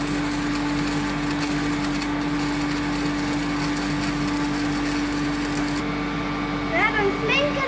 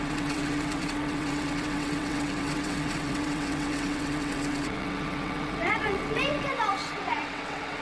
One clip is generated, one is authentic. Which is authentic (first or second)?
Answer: first